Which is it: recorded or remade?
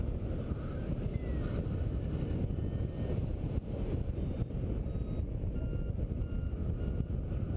recorded